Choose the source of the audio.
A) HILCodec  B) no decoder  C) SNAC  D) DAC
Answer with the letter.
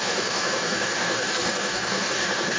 D